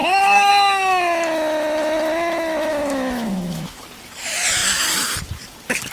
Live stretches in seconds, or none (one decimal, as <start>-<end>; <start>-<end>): 0.5-2.7; 3.8-5.9